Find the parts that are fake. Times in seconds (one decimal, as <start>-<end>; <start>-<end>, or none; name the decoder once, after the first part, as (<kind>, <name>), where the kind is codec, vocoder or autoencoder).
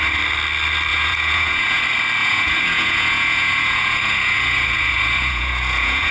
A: 0.9-1.8 (vocoder, Vocos); 2.2-6.1